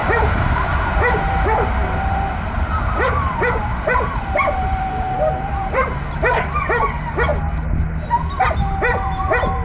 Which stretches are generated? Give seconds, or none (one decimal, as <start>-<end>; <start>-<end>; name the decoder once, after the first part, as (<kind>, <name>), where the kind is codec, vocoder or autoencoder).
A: 0.0-1.2 (vocoder, BigVGAN v2); 1.8-6.5